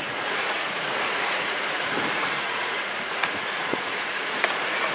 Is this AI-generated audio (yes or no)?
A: yes